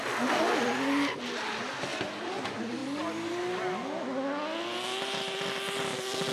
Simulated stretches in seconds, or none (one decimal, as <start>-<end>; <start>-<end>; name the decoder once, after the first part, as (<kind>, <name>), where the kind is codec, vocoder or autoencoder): none